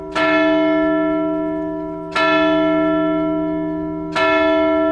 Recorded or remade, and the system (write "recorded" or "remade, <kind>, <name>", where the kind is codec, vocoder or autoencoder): recorded